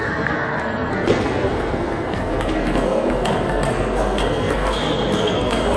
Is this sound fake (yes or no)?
yes